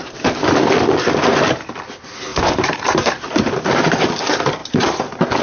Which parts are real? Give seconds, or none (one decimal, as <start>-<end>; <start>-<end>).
0.0-2.3; 3.1-4.6